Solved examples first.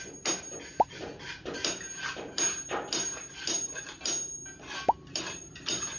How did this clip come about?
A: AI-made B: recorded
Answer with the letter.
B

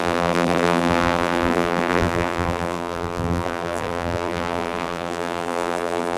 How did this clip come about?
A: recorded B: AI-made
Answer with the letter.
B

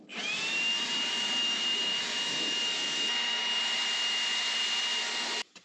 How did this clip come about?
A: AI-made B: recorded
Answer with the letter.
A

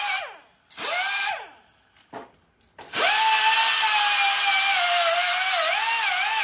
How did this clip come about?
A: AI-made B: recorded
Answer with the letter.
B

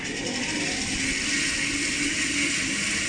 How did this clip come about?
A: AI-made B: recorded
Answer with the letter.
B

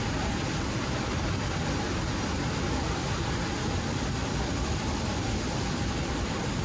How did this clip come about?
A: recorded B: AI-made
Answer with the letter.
B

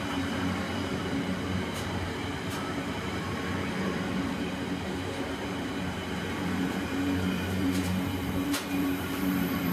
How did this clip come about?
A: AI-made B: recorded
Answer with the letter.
A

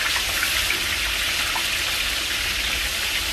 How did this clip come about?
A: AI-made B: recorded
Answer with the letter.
B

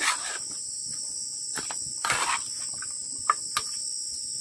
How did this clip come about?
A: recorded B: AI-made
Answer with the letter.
A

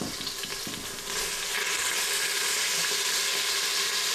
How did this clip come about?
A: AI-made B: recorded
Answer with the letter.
B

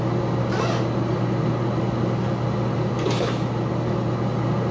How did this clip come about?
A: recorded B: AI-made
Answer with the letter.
A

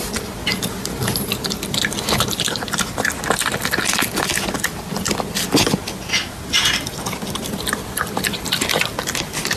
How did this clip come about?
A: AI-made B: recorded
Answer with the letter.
B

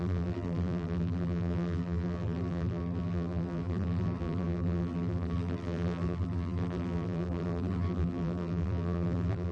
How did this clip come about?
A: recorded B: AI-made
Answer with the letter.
B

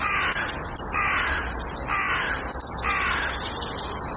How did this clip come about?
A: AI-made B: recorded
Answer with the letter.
B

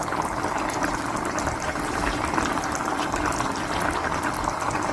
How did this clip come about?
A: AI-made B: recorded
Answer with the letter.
B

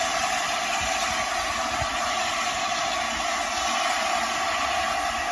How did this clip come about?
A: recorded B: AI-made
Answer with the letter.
A